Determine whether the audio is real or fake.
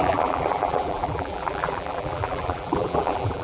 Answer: fake